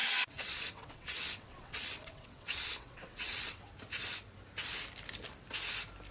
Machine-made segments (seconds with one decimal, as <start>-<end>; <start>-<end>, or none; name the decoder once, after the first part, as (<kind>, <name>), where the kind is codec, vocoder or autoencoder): 0.0-3.7 (vocoder, WaveNeXt)